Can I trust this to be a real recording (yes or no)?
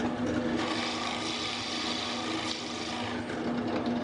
yes